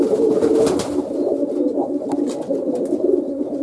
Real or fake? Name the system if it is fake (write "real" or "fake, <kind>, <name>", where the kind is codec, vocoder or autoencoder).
real